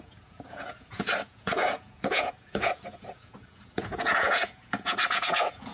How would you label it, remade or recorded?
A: remade